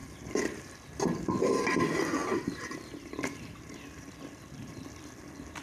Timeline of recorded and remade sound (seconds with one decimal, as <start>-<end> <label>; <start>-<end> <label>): 0.0-2.2 recorded; 2.2-3.6 remade; 3.6-5.6 recorded

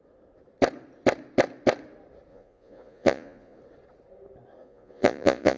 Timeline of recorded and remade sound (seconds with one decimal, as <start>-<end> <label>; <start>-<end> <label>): 0.0-2.3 recorded; 2.3-3.6 remade; 3.6-4.6 recorded; 4.6-5.6 remade

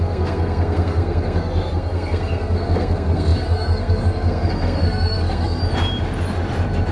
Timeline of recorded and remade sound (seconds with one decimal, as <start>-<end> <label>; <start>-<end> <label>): 0.0-5.6 remade; 5.6-6.9 recorded

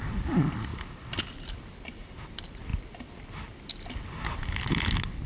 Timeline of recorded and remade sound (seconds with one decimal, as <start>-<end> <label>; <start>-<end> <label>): 0.0-5.3 recorded